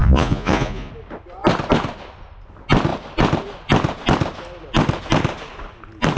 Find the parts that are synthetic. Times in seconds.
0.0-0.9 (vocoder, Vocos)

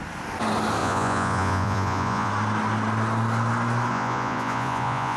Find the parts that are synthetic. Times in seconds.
0.8-2.3 (vocoder, Vocos); 3.9-5.2

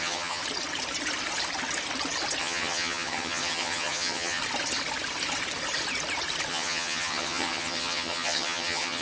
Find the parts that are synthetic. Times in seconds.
0.0-0.4 (vocoder, HiFi-GAN); 2.4-4.4; 6.5-9.0

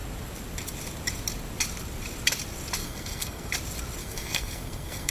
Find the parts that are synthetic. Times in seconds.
2.8-3.5 (codec, SNAC); 4.0-5.1

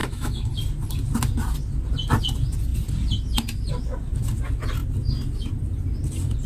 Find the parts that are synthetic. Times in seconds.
0.0-0.5 (autoencoder, DAC-VAE)

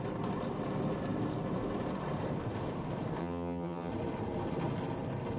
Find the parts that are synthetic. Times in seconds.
3.2-3.9 (vocoder, HiFi-GAN)